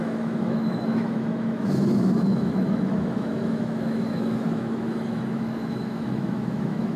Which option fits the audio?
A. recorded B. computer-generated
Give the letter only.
B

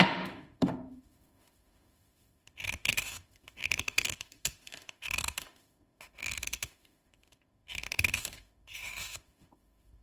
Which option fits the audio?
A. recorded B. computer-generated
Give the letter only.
B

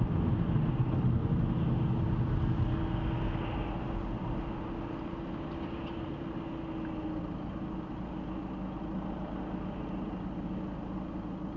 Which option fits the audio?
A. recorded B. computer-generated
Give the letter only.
A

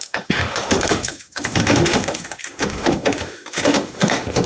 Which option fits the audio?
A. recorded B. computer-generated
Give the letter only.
B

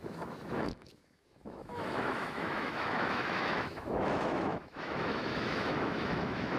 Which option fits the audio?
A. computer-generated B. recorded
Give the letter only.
A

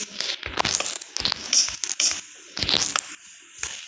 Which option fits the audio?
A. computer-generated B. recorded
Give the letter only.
B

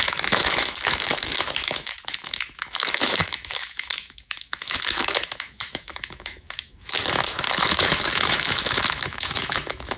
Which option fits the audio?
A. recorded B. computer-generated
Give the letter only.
B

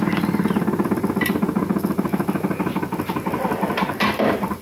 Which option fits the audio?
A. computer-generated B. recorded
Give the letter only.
B